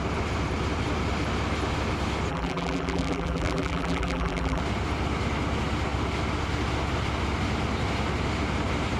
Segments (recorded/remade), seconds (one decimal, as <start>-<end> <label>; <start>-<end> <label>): 0.0-2.3 recorded; 2.3-4.6 remade; 4.6-9.0 recorded